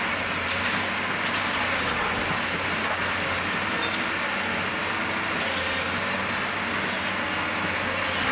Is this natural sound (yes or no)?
yes